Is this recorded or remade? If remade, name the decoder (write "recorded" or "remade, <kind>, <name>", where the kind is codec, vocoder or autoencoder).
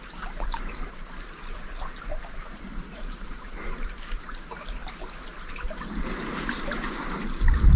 remade, vocoder, BigVGAN v2